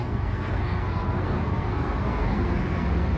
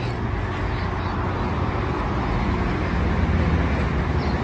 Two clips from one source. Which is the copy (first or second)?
first